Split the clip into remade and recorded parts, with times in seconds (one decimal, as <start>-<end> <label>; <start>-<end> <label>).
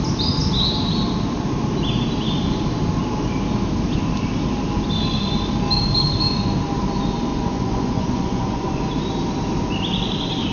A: 0.0-7.3 recorded; 7.3-8.9 remade; 8.9-10.5 recorded